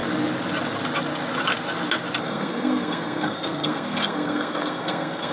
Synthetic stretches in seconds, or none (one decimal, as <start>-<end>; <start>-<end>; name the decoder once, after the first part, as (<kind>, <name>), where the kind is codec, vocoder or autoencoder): 2.2-5.3 (codec, SNAC)